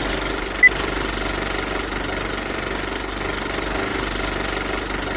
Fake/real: real